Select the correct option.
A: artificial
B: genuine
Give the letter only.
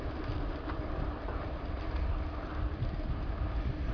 B